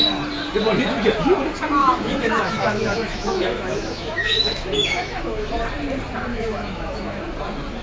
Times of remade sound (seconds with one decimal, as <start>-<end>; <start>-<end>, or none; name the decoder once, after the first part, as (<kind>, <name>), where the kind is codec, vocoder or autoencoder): 1.8-5.5 (autoencoder, DAC-VAE); 6.3-7.2